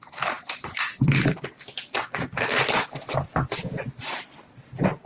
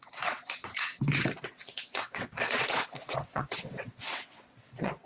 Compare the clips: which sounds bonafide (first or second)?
first